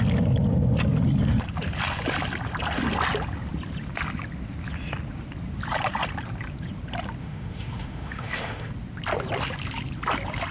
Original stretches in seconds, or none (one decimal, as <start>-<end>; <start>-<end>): 0.0-7.2; 8.7-10.5